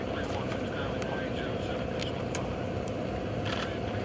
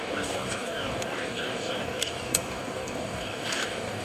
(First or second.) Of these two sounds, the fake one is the second